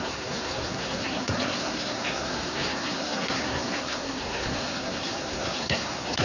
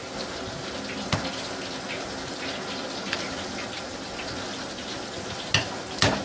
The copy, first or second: first